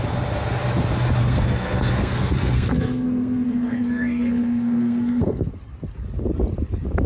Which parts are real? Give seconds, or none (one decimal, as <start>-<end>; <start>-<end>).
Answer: 0.0-1.2; 5.5-7.1